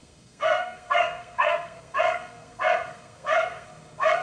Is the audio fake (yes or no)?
yes